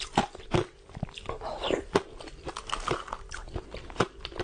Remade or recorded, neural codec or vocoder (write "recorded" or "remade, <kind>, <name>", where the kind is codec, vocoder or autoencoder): recorded